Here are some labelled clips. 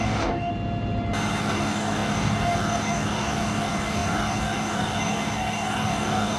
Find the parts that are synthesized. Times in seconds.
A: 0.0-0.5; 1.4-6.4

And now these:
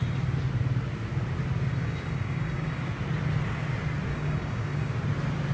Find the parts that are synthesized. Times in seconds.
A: 1.7-2.8; 4.1-4.9

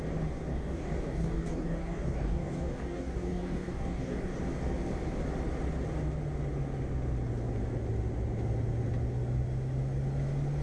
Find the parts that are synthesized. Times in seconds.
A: 0.5-4.4

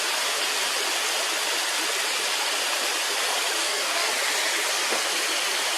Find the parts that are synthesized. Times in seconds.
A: 3.6-4.1

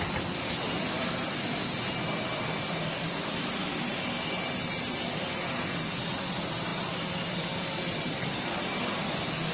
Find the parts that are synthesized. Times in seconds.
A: none

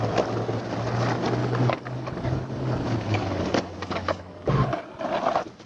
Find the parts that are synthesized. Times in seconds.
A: 1.4-4.8

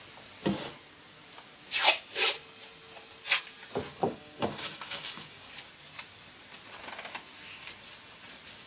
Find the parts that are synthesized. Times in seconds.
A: 4.0-5.5

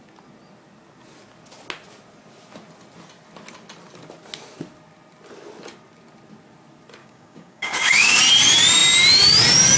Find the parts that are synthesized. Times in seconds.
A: 7.0-8.2